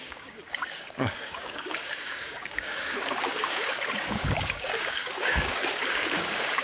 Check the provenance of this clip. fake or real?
fake